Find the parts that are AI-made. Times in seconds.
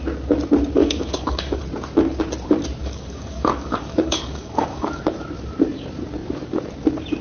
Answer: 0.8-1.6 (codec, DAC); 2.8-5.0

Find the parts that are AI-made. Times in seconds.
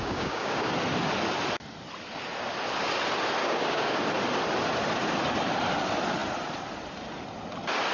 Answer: 0.0-0.7 (codec, DAC); 3.4-4.0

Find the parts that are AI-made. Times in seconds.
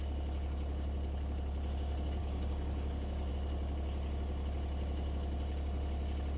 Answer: 2.2-3.3 (codec, DAC)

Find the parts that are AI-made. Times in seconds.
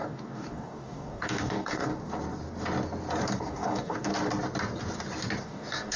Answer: 0.0-1.9 (codec, DAC); 3.4-4.1; 5.4-6.0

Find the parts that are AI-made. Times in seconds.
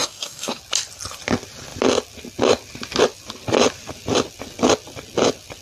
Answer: 0.0-0.6 (codec, DAC)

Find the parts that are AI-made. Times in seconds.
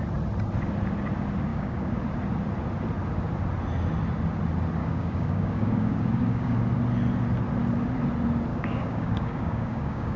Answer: 1.5-2.0 (codec, DAC); 4.8-6.6; 8.5-10.2